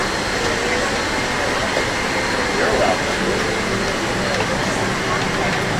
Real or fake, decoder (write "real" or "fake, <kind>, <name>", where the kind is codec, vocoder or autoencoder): real